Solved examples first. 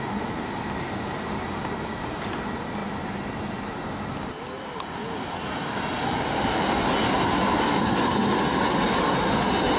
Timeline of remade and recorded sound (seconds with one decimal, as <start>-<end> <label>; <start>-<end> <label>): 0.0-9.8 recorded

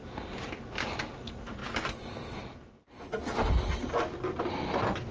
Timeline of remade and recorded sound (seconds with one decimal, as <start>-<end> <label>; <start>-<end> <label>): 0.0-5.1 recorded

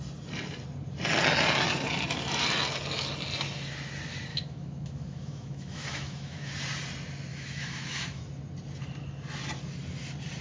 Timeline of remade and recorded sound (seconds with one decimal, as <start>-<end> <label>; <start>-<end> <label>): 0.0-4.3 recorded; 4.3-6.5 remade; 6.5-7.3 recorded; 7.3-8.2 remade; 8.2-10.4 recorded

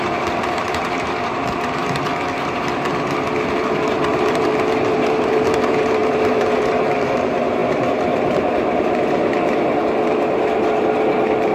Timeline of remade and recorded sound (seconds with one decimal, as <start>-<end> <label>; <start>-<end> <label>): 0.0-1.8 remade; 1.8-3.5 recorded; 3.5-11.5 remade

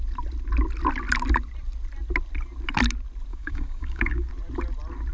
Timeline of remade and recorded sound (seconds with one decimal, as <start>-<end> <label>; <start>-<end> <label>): 0.0-3.3 recorded; 3.3-4.3 remade; 4.3-5.1 recorded

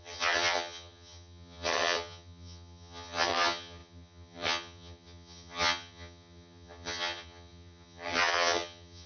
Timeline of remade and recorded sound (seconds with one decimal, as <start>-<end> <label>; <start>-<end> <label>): 0.0-9.1 remade

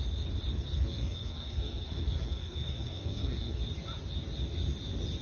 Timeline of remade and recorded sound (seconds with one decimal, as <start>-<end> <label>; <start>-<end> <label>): 0.0-0.5 recorded; 0.5-3.6 remade; 3.6-5.2 recorded